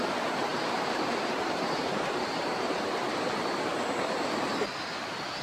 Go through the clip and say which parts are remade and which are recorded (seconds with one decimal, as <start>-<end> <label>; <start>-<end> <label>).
0.0-0.5 recorded; 0.5-3.7 remade; 3.7-5.4 recorded